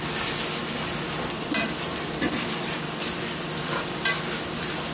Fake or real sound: real